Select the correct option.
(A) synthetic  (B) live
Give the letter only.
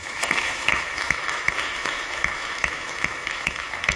A